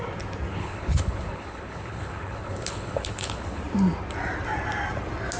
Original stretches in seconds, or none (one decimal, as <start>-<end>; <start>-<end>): 0.0-0.5; 3.6-5.4